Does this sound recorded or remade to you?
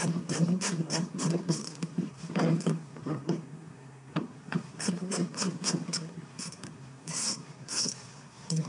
remade